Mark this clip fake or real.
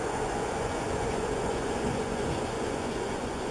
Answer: fake